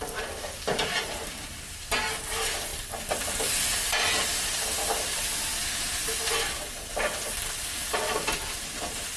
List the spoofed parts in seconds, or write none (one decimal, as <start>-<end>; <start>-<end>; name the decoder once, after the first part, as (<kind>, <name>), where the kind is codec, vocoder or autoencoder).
1.0-1.7 (vocoder, BigVGAN v2)